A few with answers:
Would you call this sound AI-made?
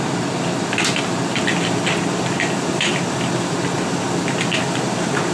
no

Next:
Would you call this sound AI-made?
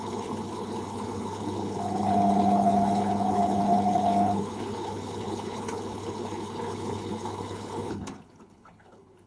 yes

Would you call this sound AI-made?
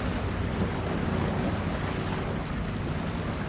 no